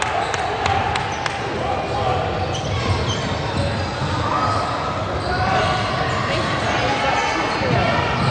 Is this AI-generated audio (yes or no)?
no